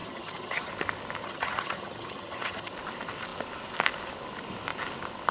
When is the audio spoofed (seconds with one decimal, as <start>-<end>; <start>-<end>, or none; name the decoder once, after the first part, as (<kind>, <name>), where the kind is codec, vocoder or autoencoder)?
0.0-0.7 (vocoder, HiFi-GAN); 1.2-2.7